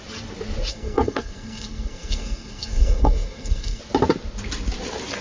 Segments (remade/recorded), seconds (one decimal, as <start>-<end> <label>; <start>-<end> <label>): 0.0-0.7 recorded; 0.7-3.8 remade; 3.8-5.2 recorded